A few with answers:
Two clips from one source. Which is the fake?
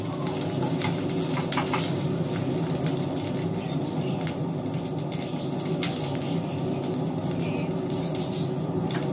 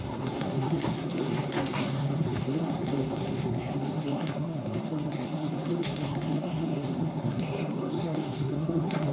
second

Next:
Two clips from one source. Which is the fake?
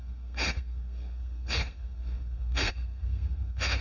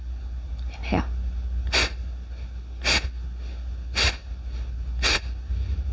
first